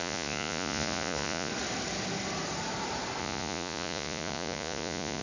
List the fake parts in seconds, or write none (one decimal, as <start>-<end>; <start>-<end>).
0.0-1.5; 3.2-5.2